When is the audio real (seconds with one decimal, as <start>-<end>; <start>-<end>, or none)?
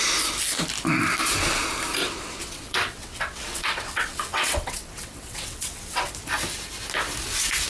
0.0-2.0; 6.1-7.7